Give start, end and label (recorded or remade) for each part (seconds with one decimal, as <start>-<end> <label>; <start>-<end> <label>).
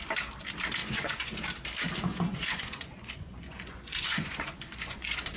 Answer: 0.0-0.8 recorded; 0.8-1.4 remade; 1.4-2.1 recorded; 2.1-5.4 remade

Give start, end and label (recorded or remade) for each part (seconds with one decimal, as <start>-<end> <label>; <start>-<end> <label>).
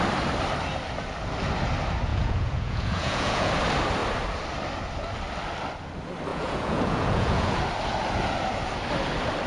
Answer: 0.0-2.1 recorded; 2.1-3.5 remade; 3.5-6.3 recorded; 6.3-7.6 remade; 7.6-9.5 recorded